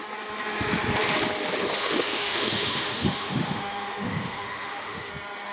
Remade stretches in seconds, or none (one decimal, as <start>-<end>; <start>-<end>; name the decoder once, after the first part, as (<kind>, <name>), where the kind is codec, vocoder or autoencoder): 1.8-5.1 (autoencoder, DAC-VAE)